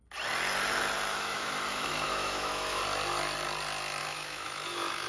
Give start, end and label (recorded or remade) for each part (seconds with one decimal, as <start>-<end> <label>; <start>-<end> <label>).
0.0-1.1 recorded; 1.1-2.8 remade; 2.8-4.0 recorded; 4.0-5.1 remade